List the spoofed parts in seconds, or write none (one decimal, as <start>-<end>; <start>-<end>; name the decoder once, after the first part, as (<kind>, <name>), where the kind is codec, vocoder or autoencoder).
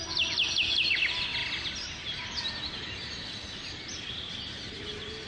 none